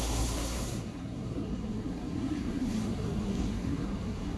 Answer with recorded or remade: remade